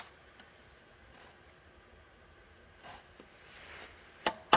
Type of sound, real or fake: real